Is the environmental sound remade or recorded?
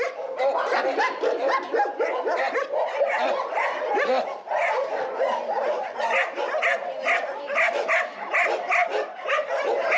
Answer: recorded